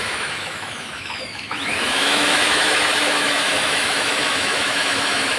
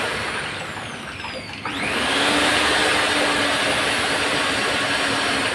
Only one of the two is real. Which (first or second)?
second